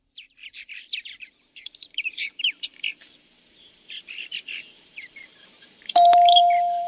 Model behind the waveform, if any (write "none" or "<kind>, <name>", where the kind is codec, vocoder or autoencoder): vocoder, BigVGAN v2